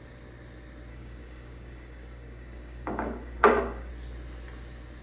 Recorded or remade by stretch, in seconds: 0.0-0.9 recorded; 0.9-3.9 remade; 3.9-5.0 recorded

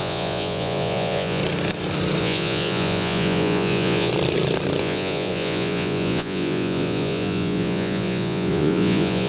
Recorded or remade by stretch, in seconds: 0.0-1.4 remade; 1.4-2.2 recorded; 2.2-4.1 remade; 4.1-4.8 recorded; 4.8-9.3 remade